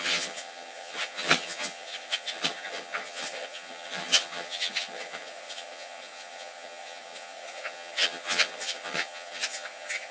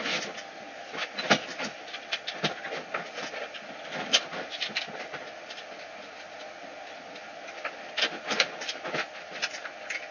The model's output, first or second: first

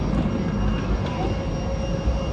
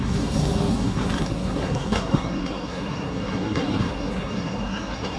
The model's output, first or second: second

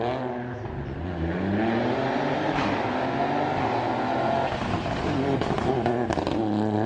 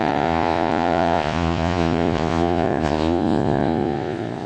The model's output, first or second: second